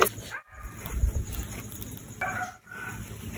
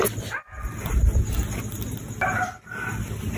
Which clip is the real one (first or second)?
second